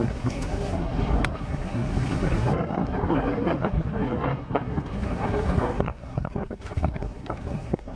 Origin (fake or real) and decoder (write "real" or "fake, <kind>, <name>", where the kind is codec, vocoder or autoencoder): fake, codec, SNAC